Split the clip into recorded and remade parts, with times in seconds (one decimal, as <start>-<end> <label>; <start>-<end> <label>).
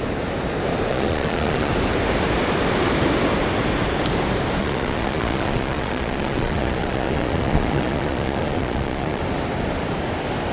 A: 0.0-0.9 recorded; 0.9-1.7 remade; 1.7-4.6 recorded; 4.6-9.2 remade; 9.2-10.5 recorded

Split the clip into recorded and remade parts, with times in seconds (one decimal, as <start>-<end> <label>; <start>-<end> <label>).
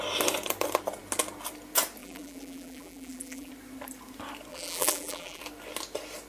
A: 0.0-2.0 recorded; 2.0-3.5 remade; 3.5-4.5 recorded; 4.5-5.4 remade; 5.4-6.3 recorded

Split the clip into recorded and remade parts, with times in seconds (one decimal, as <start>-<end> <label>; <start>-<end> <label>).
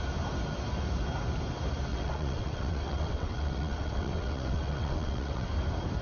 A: 0.0-1.9 recorded; 1.9-5.5 remade; 5.5-6.0 recorded